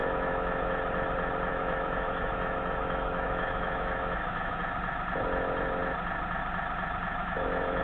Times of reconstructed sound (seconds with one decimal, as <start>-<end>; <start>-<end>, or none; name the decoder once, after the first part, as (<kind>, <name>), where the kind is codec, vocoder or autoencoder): 0.0-0.7 (autoencoder, DAC-VAE); 1.5-4.6; 7.2-7.8